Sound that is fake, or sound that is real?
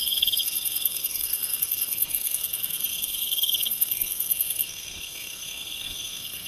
fake